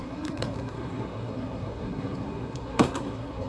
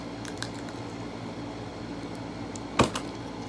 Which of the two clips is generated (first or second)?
first